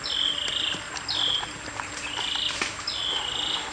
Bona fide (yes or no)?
yes